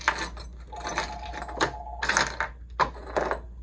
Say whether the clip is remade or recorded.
recorded